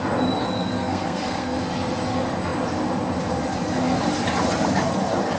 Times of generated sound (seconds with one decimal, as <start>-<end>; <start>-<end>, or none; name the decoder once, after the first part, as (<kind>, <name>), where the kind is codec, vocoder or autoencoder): 0.4-1.6 (codec, SNAC)